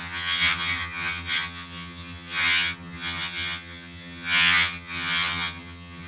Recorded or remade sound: remade